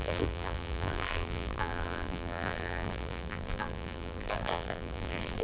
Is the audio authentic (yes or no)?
no